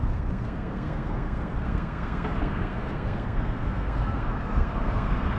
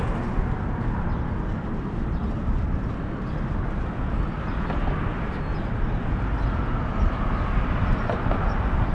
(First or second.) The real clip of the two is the second